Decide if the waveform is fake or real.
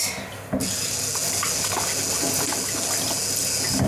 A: real